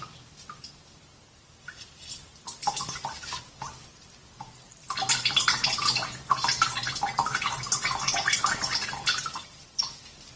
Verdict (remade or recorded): recorded